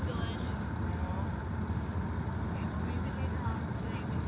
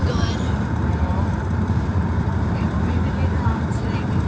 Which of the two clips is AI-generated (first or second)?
second